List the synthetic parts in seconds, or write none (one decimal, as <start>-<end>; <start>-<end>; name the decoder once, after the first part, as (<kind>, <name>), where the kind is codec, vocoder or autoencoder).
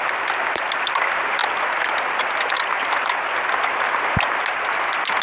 none